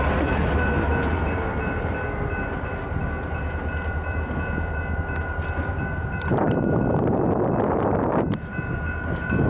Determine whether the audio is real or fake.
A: real